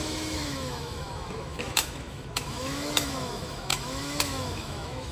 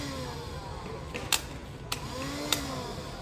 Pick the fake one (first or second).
first